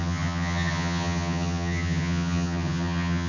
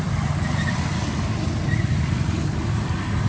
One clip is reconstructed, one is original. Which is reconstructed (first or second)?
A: first